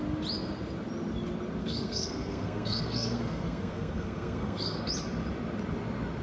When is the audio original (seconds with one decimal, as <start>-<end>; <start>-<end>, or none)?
0.0-1.6; 4.9-6.2